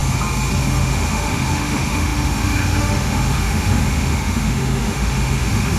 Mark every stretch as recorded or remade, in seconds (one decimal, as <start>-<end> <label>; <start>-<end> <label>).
0.0-0.6 recorded; 0.6-5.8 remade

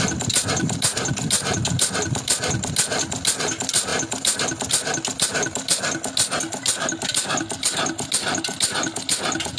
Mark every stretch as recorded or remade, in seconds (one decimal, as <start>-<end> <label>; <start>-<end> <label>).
0.0-9.6 recorded

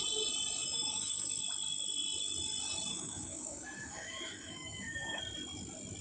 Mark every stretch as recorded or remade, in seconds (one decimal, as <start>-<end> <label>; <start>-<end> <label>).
0.0-0.6 recorded; 0.6-1.4 remade; 1.4-2.9 recorded; 2.9-5.2 remade; 5.2-6.0 recorded

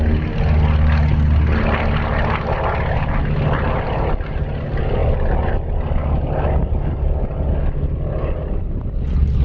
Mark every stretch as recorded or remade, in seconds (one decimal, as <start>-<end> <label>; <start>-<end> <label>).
0.0-9.4 recorded

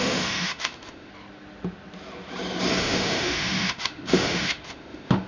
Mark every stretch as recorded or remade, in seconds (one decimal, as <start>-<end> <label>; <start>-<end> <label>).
0.0-1.1 remade; 1.1-2.8 recorded; 2.8-5.3 remade

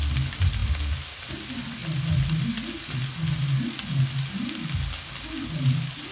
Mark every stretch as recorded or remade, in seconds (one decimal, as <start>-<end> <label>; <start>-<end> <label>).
0.0-6.1 recorded

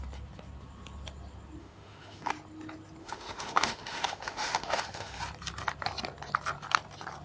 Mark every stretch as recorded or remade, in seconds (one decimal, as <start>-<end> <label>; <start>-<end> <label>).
0.0-1.6 recorded; 1.6-2.3 remade; 2.3-3.0 recorded; 3.0-5.2 remade; 5.2-7.2 recorded